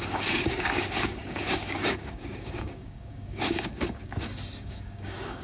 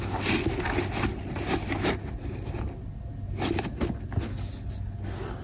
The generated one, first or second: first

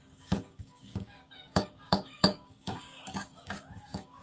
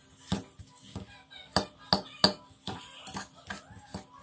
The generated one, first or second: first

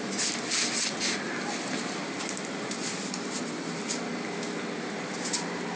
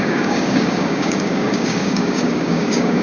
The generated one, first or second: second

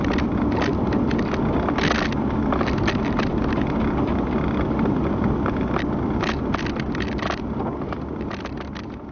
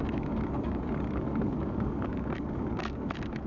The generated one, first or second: second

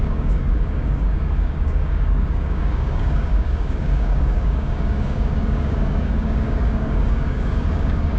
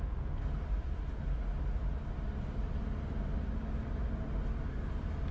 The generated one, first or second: first